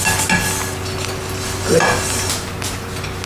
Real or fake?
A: real